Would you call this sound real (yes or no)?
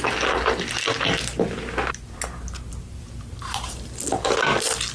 yes